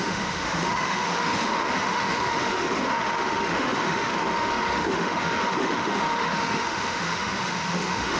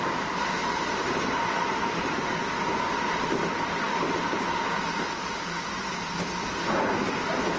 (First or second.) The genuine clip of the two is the second